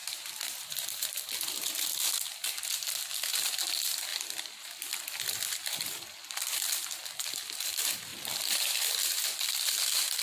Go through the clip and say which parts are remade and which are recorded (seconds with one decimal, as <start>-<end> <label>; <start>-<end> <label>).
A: 0.0-1.7 remade; 1.7-4.1 recorded; 4.1-5.2 remade; 5.2-8.1 recorded; 8.1-10.2 remade